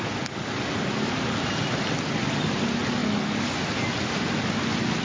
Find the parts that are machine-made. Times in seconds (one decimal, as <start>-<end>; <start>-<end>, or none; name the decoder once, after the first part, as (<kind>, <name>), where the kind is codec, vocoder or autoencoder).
none